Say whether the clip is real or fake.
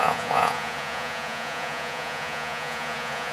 fake